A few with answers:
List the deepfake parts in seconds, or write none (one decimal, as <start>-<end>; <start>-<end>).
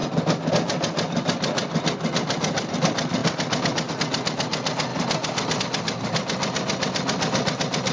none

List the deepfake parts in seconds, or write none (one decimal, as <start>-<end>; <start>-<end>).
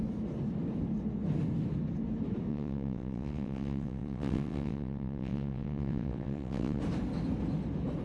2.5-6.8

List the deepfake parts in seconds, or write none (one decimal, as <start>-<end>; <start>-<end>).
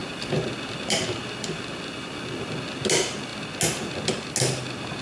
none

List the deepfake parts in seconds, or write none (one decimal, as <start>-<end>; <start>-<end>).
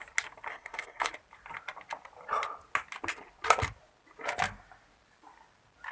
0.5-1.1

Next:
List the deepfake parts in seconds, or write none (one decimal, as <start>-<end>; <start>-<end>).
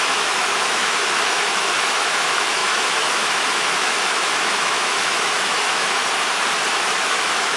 0.0-6.0; 6.8-7.6